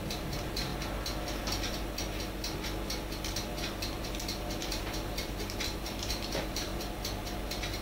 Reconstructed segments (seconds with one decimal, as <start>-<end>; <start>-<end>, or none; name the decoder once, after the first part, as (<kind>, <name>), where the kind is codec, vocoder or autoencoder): 0.0-0.7 (vocoder, BigVGAN v2); 4.6-6.7